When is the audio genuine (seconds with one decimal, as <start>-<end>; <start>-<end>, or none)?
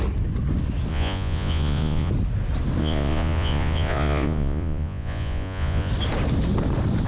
0.0-0.9; 2.1-2.8; 5.9-7.1